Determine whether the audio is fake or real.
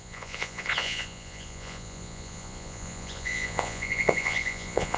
fake